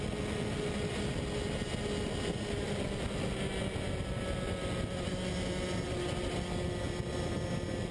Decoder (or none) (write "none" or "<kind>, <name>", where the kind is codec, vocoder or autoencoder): none